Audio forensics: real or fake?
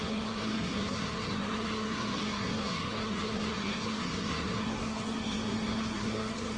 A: fake